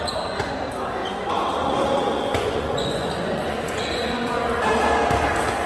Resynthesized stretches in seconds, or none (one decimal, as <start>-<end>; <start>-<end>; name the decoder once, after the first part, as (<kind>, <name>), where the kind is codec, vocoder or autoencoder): 1.0-4.4 (vocoder, Vocos)